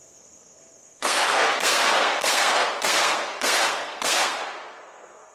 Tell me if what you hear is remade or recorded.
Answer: remade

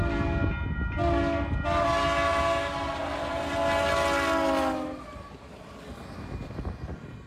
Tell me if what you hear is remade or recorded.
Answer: recorded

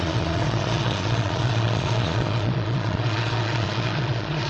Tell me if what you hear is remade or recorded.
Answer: remade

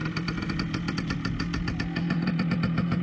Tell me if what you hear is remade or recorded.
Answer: recorded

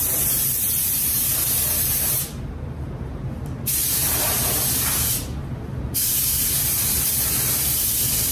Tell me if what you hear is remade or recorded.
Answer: remade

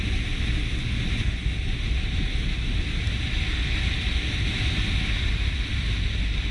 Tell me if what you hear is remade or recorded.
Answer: recorded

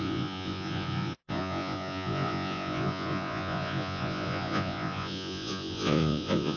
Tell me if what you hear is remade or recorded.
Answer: remade